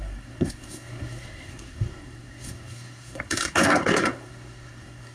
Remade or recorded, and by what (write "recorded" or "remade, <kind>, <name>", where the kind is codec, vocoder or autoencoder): remade, codec, SNAC